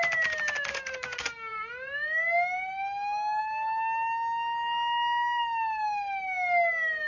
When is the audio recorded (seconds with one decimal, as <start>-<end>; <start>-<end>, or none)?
0.0-7.1